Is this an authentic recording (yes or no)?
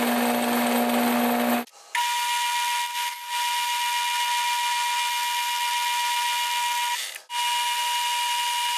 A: yes